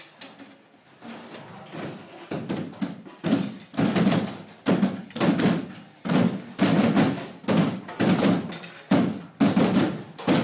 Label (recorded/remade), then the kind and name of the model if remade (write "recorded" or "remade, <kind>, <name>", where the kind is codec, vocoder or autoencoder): recorded